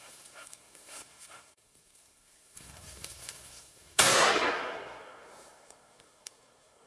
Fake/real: fake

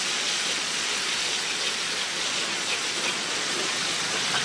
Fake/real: fake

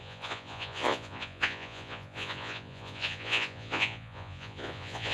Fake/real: fake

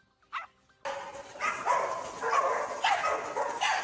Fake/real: real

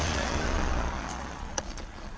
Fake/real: fake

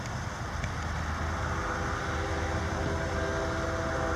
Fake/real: real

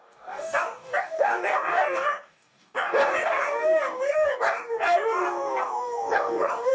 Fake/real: fake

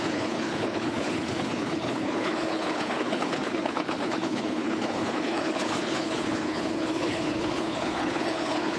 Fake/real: fake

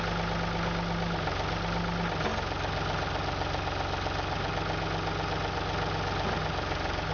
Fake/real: real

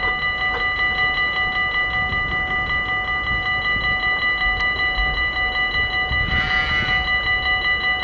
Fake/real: real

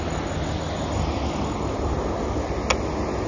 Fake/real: real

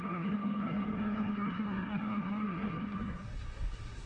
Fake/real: fake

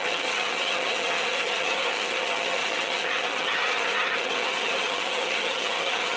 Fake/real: fake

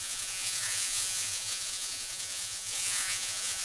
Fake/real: fake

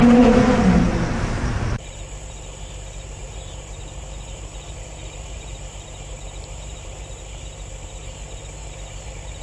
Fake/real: fake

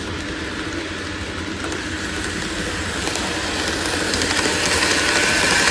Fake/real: real